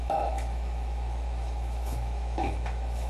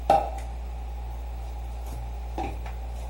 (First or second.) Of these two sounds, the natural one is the second